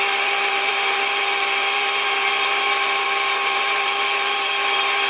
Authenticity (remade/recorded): remade